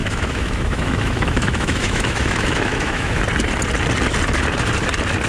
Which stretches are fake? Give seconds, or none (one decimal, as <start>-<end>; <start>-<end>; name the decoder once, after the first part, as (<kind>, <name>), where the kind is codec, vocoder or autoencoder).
0.0-3.2 (autoencoder, DAC-VAE)